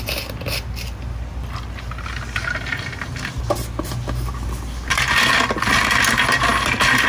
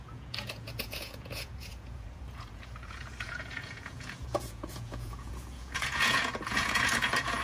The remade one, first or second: second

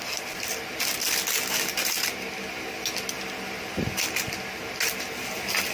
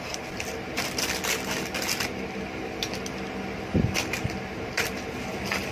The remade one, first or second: second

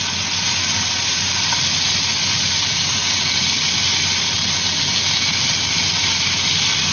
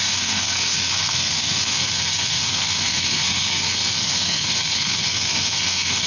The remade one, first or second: second